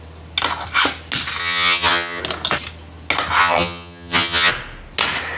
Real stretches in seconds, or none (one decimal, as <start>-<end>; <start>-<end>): 0.0-1.4; 2.2-3.4; 4.5-5.4